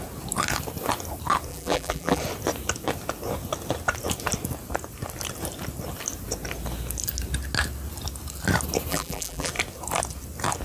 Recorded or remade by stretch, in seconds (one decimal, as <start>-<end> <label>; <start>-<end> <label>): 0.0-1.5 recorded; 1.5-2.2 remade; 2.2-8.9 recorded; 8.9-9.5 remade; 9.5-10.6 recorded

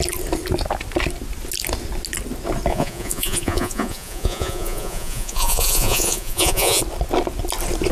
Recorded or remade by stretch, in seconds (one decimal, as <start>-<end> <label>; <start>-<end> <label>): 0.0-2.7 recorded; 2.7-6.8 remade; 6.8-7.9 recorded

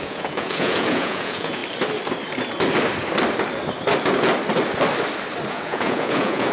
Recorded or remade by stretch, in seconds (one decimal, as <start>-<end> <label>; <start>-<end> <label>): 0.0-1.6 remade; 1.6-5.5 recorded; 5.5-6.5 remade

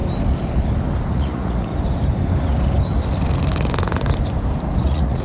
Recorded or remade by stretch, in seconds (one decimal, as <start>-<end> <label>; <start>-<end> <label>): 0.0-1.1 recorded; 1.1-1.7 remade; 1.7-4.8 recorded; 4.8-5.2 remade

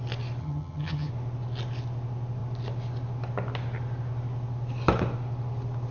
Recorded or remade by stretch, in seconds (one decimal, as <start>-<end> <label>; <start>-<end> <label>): 0.0-0.4 recorded; 0.4-1.1 remade; 1.1-5.9 recorded